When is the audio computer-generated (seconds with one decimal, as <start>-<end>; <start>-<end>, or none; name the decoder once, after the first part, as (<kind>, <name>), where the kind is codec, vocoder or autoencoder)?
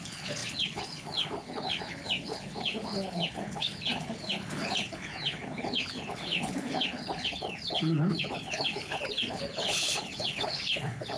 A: 0.0-11.2 (codec, HILCodec)